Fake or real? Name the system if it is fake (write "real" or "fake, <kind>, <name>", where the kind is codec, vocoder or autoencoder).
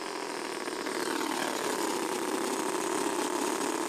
real